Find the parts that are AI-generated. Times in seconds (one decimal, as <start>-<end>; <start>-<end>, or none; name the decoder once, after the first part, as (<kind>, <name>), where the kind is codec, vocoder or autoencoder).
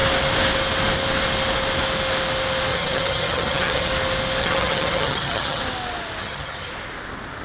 2.7-3.9 (vocoder, HiFi-GAN); 4.4-5.6; 6.2-6.7